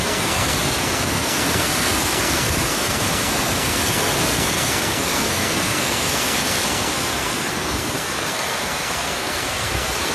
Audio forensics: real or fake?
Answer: fake